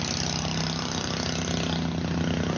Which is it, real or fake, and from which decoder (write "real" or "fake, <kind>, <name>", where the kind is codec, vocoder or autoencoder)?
real